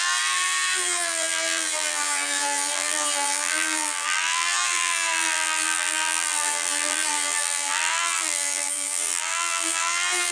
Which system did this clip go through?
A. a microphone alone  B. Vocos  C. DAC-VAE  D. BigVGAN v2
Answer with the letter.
D